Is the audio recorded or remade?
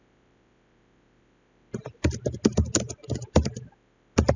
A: recorded